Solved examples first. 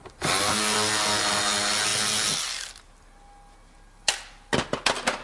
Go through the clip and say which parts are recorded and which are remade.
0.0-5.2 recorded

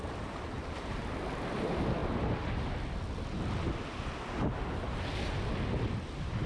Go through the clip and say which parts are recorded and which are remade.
0.0-6.5 recorded